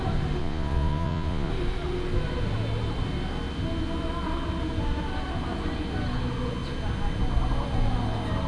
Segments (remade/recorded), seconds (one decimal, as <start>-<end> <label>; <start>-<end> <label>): 0.0-0.4 recorded; 0.4-1.5 remade; 1.5-8.5 recorded